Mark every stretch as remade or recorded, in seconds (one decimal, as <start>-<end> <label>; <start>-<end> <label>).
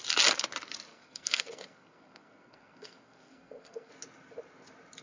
0.0-0.9 recorded; 0.9-3.9 remade; 3.9-5.0 recorded